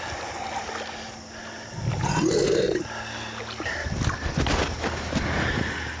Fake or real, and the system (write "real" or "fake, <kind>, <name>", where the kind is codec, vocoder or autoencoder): real